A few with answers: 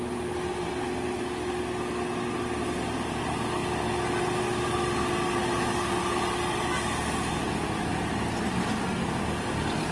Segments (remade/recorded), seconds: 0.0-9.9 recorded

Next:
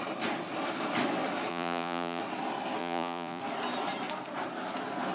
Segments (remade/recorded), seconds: 0.0-1.5 recorded; 1.5-2.2 remade; 2.2-2.8 recorded; 2.8-3.4 remade; 3.4-5.1 recorded